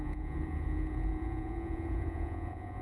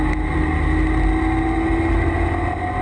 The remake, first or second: first